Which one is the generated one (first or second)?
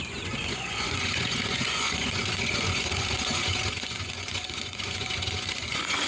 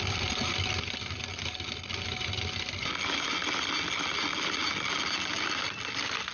first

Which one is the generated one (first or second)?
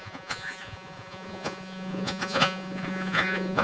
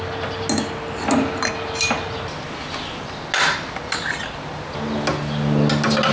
first